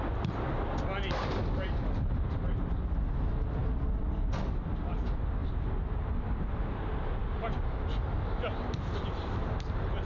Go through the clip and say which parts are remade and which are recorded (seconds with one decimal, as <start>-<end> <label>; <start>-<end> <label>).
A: 0.0-3.6 recorded; 3.6-4.3 remade; 4.3-10.1 recorded